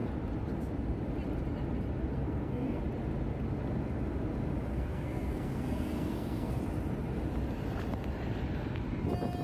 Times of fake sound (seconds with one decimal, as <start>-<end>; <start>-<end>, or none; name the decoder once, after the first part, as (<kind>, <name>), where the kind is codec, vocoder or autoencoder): 2.1-2.8 (codec, SNAC); 4.7-6.6